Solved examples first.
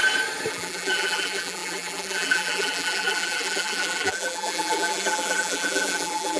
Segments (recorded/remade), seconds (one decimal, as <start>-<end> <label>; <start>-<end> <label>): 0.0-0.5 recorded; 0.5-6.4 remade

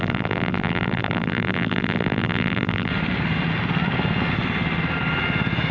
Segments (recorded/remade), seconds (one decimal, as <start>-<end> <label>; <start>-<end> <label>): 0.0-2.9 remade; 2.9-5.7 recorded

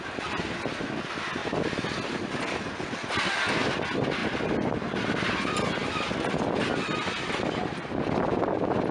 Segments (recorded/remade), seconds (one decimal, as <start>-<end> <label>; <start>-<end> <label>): 0.0-4.2 recorded; 4.2-5.3 remade; 5.3-8.9 recorded

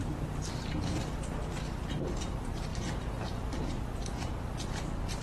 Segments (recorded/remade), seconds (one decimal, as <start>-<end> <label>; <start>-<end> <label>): 0.0-5.2 remade

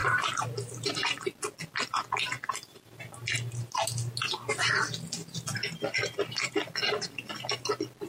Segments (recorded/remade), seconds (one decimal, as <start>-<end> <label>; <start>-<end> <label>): 0.0-8.1 recorded